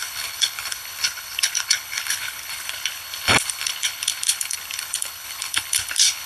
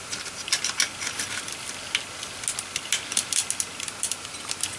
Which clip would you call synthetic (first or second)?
first